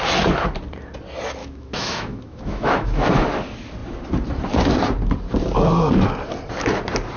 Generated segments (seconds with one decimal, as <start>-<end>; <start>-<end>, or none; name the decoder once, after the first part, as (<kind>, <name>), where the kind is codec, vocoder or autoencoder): 1.4-3.1 (autoencoder, DAC-VAE)